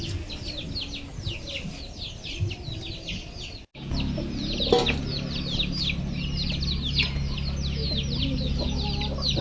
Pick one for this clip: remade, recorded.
recorded